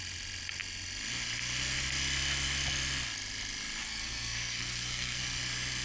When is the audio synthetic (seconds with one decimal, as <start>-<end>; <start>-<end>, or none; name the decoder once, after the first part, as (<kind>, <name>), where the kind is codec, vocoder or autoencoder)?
3.8-5.2 (codec, SNAC)